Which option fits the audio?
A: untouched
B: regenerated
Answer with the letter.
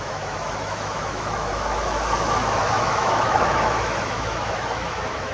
B